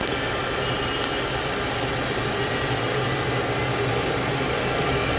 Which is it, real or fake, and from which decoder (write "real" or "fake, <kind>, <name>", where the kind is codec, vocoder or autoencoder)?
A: real